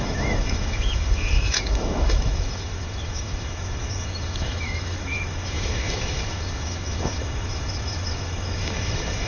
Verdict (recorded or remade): remade